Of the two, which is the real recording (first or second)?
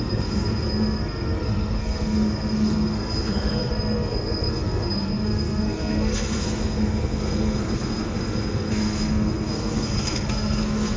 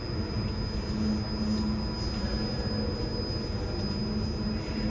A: second